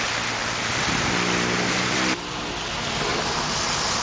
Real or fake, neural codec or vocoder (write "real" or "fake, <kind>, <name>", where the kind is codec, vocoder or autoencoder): real